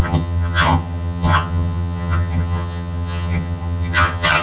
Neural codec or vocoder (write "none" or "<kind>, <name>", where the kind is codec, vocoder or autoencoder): vocoder, HiFi-GAN